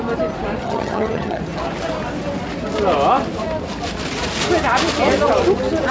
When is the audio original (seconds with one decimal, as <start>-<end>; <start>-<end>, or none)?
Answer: 0.0-0.6; 1.4-5.9

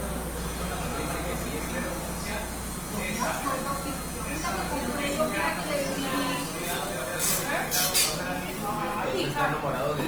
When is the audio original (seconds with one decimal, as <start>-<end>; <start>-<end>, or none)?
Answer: 0.0-10.1

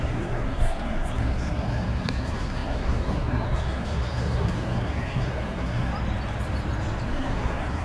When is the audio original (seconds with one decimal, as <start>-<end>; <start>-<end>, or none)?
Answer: 5.9-7.1

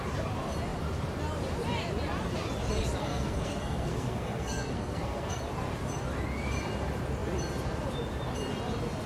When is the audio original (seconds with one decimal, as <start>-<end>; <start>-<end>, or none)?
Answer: 0.0-3.0; 5.4-9.1

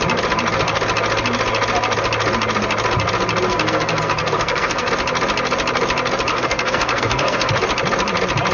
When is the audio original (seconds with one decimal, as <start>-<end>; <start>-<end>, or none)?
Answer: 0.0-3.5; 4.9-6.3; 7.5-8.5

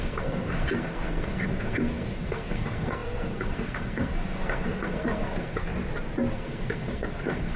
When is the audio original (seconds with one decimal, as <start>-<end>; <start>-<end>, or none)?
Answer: 5.7-6.3

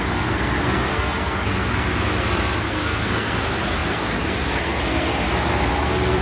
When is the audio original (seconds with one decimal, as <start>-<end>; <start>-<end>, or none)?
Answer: 5.1-5.7

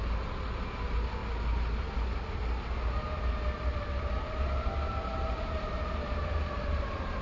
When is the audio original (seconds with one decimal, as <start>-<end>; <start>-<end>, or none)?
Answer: 0.0-7.2